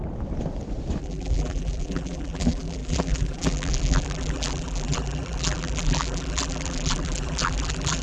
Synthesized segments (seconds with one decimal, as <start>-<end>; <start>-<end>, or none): 1.0-8.0